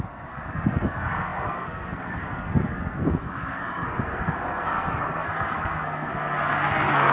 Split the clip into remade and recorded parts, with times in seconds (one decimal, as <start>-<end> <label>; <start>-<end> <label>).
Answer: 0.0-7.1 remade